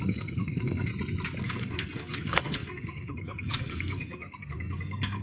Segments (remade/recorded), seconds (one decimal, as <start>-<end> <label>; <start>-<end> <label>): 0.0-0.9 remade; 0.9-1.4 recorded; 1.4-5.2 remade